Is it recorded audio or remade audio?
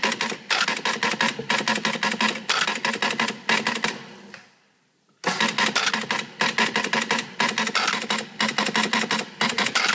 recorded